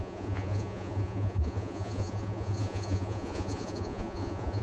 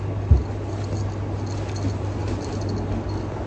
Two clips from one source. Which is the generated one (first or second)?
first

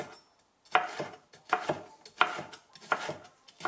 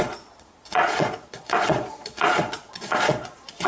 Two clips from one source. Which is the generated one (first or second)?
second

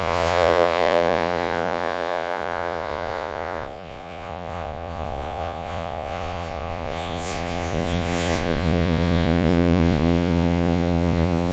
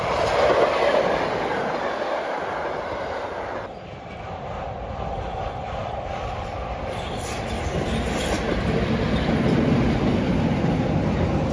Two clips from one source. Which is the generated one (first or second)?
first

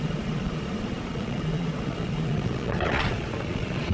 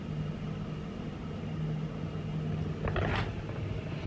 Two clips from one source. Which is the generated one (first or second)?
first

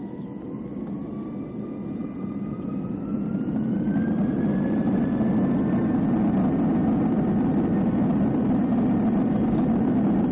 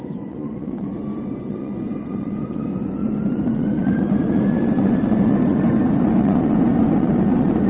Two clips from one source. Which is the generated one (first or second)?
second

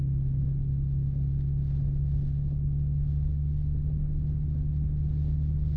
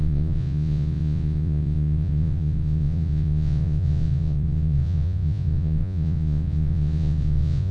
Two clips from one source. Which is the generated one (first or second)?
second